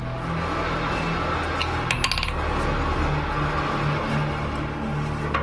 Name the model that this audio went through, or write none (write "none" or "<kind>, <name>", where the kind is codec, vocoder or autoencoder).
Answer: none